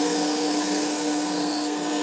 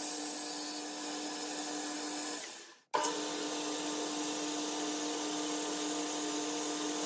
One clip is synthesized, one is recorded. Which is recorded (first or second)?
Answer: second